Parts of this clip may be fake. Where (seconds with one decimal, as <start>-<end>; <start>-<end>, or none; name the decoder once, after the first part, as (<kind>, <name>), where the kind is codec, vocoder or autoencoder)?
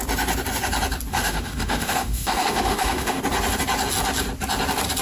1.1-3.2 (autoencoder, DAC-VAE)